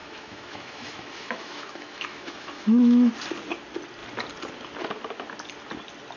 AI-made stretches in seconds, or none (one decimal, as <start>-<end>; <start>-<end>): 0.0-3.1